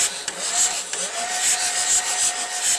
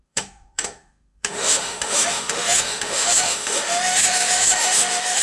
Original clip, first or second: first